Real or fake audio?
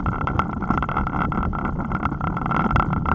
fake